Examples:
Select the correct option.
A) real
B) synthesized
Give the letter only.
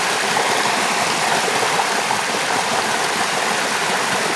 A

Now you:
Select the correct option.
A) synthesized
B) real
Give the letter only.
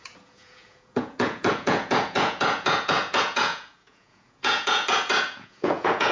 A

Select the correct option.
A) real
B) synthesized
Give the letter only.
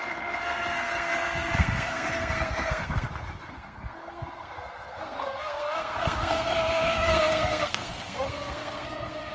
B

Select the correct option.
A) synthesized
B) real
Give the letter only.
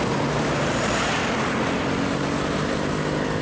B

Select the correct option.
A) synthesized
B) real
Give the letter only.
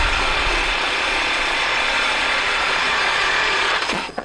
A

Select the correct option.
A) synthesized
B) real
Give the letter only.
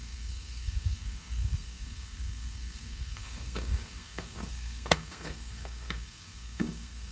A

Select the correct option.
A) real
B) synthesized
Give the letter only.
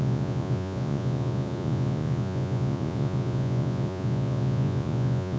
B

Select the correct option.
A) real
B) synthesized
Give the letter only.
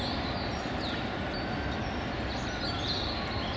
A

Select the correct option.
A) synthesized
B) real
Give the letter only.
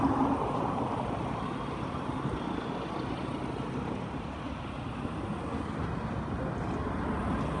B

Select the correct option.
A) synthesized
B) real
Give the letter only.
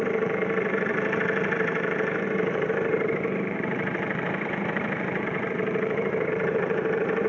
A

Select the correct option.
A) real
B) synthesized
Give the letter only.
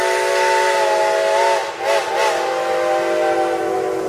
A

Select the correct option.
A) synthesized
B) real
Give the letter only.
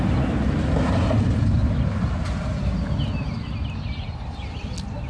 B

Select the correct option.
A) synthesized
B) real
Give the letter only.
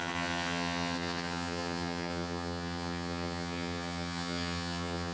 A